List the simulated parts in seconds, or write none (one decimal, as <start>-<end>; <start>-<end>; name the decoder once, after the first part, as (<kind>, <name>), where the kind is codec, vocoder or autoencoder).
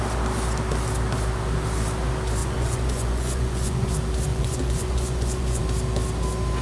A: 2.4-3.9 (vocoder, Vocos); 4.3-5.6